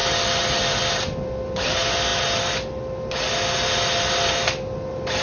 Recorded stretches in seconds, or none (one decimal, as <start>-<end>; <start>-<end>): 0.0-5.2